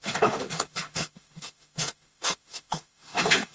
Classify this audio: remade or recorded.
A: remade